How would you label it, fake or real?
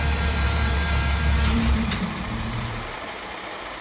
fake